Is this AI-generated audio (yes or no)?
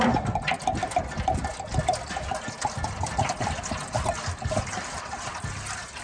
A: yes